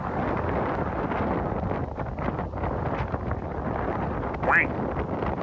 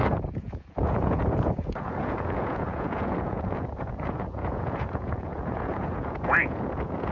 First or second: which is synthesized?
second